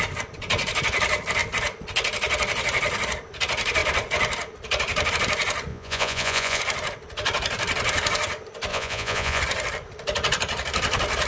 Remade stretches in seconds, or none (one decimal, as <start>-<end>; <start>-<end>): 5.7-6.6; 8.7-9.4